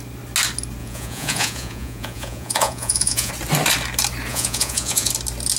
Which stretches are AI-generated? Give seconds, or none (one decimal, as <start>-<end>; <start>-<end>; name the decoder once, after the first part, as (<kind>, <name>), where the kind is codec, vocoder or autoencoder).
0.8-3.3 (vocoder, Vocos); 4.3-5.1